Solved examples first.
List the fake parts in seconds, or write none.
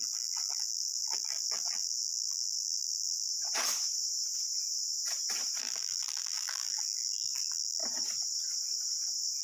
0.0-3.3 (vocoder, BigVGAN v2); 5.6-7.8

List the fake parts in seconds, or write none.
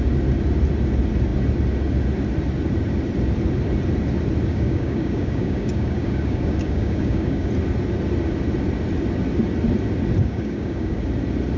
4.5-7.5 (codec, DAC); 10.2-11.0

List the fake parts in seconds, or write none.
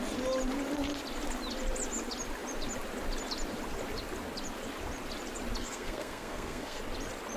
5.6-6.8 (codec, SNAC)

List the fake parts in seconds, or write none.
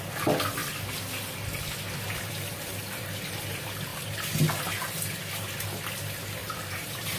3.9-4.7 (vocoder, BigVGAN v2); 6.4-7.2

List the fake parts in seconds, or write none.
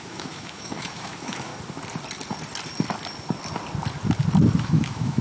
0.0-1.5 (autoencoder, DAC-VAE); 4.6-5.2